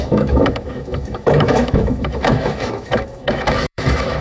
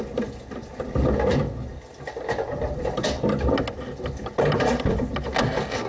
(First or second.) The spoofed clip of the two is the first